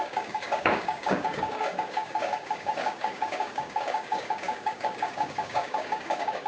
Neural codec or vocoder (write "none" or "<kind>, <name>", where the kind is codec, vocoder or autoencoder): codec, DAC